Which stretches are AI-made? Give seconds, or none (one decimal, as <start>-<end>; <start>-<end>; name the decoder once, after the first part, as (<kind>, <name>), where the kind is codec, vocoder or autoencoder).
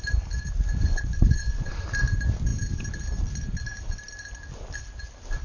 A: 0.7-1.7 (vocoder, Vocos)